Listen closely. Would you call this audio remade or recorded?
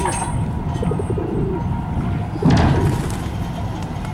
recorded